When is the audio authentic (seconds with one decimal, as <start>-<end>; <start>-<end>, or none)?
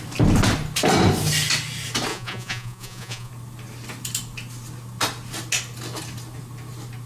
0.0-2.1; 3.3-7.1